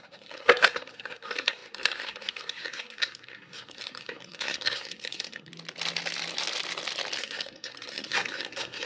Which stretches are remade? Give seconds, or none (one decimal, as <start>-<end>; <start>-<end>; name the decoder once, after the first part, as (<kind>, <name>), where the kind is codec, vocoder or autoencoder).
0.0-5.5 (codec, SNAC); 7.2-8.9